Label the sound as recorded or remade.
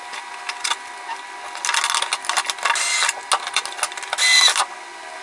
recorded